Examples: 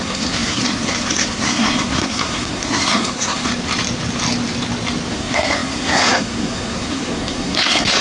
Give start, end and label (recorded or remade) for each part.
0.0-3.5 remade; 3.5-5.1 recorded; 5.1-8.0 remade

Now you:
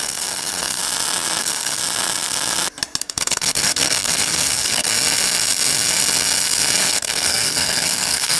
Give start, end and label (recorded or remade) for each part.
0.0-0.8 remade; 0.8-1.4 recorded; 1.4-1.8 remade; 1.8-3.0 recorded; 3.0-4.9 remade; 4.9-6.8 recorded; 6.8-8.4 remade

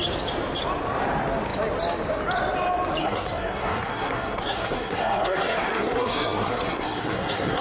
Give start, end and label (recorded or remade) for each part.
0.0-3.0 recorded; 3.0-7.6 remade

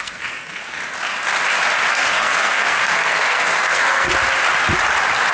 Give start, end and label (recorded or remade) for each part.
0.0-0.8 remade; 0.8-1.9 recorded; 1.9-4.1 remade; 4.1-5.3 recorded

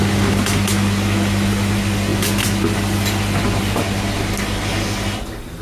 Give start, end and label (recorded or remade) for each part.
0.0-5.6 recorded

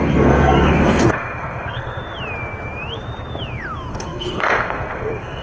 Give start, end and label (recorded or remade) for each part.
0.0-2.0 remade; 2.0-3.9 recorded; 3.9-5.4 remade

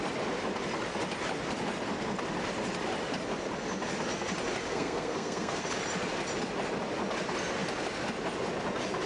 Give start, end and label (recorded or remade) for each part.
0.0-4.7 recorded; 4.7-5.6 remade; 5.6-9.1 recorded

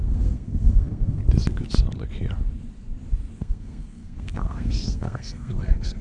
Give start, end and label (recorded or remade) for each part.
0.0-1.2 remade; 1.2-3.4 recorded; 3.4-6.0 remade